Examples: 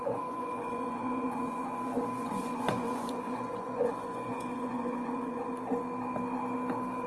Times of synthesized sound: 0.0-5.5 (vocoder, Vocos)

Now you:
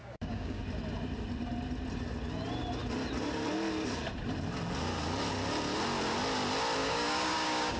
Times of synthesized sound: 0.0-0.6 (codec, DAC); 6.8-7.8

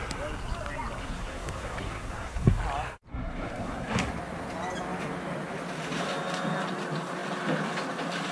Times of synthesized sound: 1.0-2.6 (codec, SNAC); 3.1-4.1